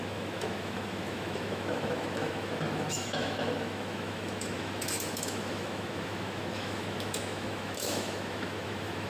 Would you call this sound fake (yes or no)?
yes